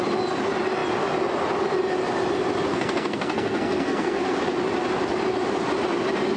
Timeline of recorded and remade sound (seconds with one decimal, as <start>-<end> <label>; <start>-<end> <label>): 0.0-2.7 recorded; 2.7-4.4 remade; 4.4-6.4 recorded